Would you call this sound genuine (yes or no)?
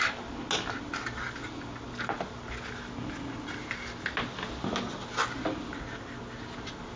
yes